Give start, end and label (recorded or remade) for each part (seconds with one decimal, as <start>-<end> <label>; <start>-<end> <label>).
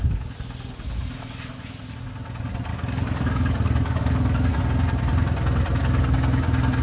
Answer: 0.0-2.7 recorded; 2.7-4.6 remade; 4.6-6.8 recorded